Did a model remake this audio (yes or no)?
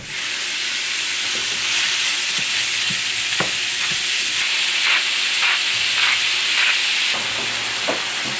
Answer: no